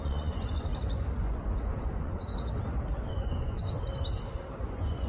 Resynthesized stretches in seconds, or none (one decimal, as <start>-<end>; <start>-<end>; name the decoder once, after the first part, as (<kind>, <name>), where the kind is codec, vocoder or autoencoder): 0.0-0.7 (vocoder, Vocos); 1.2-2.3; 3.1-3.6; 4.6-5.1